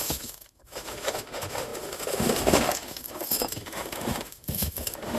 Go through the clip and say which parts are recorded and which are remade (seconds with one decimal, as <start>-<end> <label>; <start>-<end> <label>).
0.0-5.2 remade